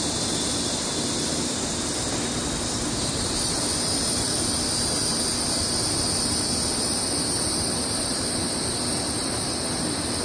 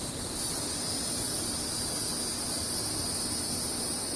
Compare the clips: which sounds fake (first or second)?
first